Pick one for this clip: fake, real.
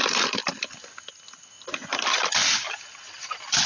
real